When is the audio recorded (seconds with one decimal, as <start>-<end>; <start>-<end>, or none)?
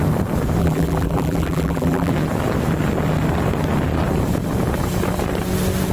0.0-0.6; 2.1-5.9